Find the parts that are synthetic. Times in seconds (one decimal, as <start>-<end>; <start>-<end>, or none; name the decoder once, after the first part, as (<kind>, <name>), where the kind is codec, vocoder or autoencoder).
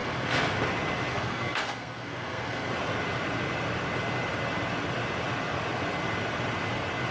0.0-0.6 (codec, SNAC); 1.1-2.7